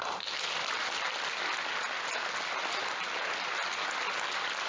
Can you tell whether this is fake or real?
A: real